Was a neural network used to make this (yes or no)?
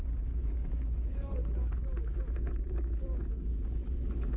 yes